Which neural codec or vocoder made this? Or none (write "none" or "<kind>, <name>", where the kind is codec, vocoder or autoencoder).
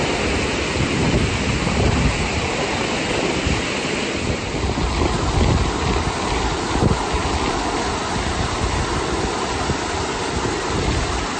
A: none